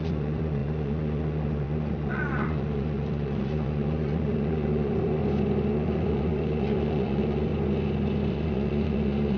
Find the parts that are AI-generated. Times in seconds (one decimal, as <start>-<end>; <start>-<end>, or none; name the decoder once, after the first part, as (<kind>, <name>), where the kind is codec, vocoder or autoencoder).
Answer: 0.0-5.2 (vocoder, Vocos); 5.7-7.5; 8.3-9.4

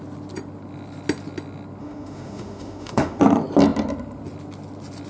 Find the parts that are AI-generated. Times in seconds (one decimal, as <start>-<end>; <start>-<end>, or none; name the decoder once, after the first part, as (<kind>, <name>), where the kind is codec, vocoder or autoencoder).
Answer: 1.8-3.2 (autoencoder, DAC-VAE)

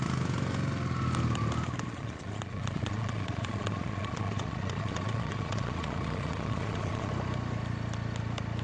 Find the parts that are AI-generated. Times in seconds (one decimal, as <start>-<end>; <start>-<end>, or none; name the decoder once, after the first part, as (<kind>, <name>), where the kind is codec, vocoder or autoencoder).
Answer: 1.9-7.1 (vocoder, Vocos)

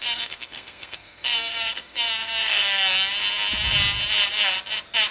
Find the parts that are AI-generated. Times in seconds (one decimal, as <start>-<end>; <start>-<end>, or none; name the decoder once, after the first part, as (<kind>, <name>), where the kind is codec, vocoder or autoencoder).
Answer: 0.0-3.1 (codec, SNAC)

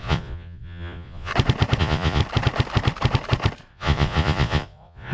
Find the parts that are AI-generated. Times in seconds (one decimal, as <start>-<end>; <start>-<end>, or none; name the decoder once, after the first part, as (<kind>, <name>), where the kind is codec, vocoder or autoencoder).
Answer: 0.0-1.3 (vocoder, Vocos); 1.8-2.2; 3.7-5.1

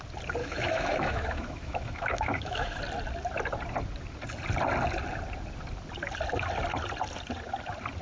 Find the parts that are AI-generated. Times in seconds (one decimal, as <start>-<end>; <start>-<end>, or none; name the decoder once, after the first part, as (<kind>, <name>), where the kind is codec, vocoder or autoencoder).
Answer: 0.4-2.8 (autoencoder, DAC-VAE)

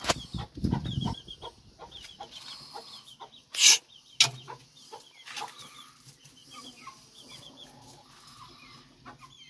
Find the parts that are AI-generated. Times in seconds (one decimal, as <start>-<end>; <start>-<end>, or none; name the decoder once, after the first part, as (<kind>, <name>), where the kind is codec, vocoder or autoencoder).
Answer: none